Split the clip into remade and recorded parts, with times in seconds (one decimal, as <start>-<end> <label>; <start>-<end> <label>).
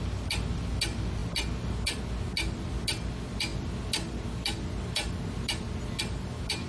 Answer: 0.0-6.7 recorded